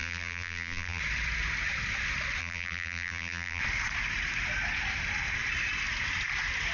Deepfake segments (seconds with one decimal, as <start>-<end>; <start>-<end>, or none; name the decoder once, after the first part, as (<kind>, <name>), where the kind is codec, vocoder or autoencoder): 0.0-1.0 (vocoder, BigVGAN v2); 2.4-3.6